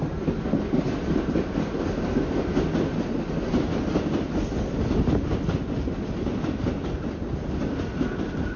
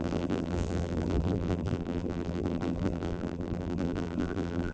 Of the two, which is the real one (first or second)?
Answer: first